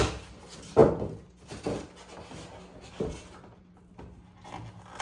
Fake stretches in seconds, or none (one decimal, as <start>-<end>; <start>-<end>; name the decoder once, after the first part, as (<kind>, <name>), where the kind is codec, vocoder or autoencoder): none